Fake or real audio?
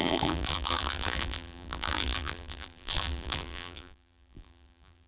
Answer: fake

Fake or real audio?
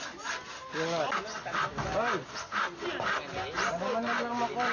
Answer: real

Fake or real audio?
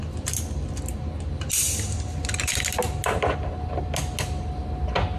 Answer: real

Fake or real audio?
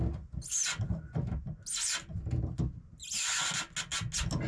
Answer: real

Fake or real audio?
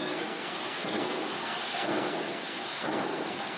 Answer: fake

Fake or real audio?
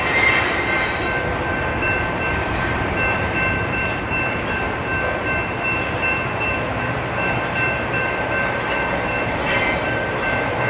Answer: fake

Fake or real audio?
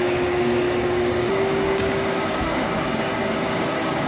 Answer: fake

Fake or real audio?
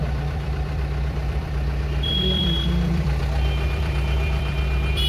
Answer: fake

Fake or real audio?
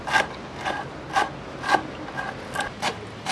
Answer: real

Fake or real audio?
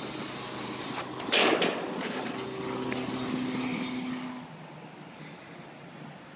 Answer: real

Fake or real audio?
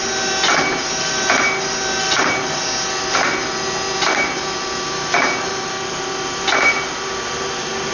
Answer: real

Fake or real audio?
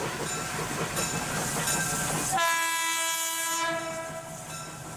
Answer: real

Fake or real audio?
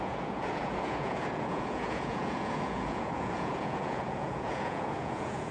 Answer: fake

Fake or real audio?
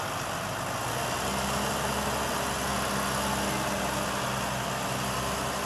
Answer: real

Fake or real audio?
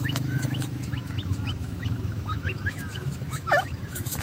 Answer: fake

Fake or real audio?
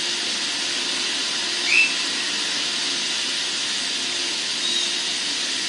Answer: real